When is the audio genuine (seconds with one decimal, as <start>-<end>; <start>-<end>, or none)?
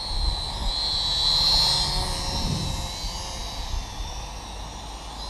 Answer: 0.0-5.3